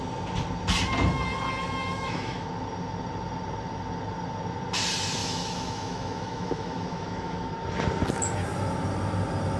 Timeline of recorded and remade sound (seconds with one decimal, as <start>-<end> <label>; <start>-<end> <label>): 0.0-1.8 recorded; 1.8-2.5 remade; 2.5-5.2 recorded; 5.2-7.5 remade; 7.5-9.6 recorded